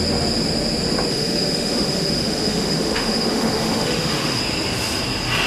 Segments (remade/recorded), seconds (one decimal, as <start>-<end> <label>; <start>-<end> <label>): 0.0-1.1 recorded; 1.1-4.4 remade; 4.4-5.5 recorded